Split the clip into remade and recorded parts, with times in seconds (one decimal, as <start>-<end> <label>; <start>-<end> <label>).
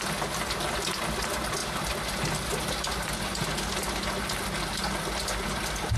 0.0-6.0 recorded